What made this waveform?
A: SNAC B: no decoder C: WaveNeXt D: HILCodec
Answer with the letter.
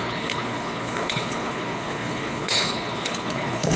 D